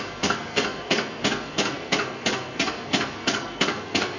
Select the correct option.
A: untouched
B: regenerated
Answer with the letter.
B